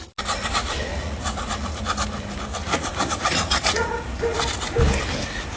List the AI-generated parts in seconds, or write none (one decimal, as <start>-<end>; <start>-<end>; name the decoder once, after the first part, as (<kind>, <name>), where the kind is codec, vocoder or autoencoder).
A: 0.9-1.8 (vocoder, Vocos); 2.6-3.9